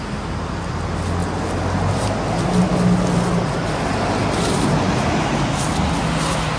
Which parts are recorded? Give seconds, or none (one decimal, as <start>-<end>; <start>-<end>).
0.0-6.6